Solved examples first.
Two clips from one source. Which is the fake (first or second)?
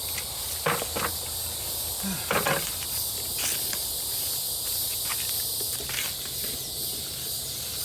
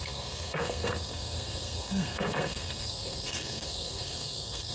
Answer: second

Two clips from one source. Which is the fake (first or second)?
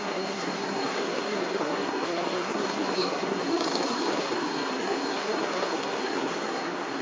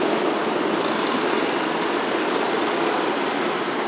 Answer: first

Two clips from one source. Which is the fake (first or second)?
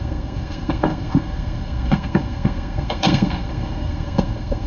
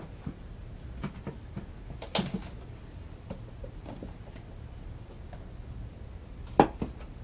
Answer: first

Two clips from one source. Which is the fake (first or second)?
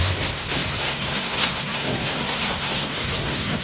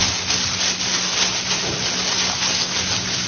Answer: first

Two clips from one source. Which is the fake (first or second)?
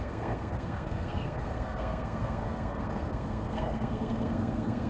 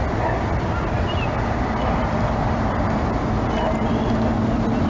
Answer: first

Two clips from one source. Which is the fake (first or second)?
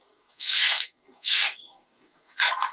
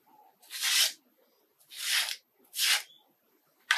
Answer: first